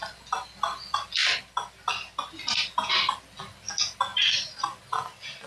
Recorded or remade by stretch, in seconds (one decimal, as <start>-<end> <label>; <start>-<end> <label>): 0.0-5.5 recorded